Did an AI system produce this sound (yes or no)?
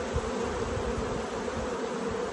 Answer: no